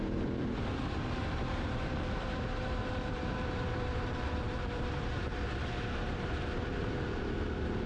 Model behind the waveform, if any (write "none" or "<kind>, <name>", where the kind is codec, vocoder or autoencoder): vocoder, BigVGAN v2